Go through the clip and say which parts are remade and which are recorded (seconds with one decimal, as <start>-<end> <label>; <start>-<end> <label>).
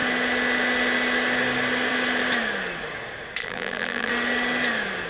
0.0-3.4 recorded; 3.4-4.1 remade; 4.1-5.1 recorded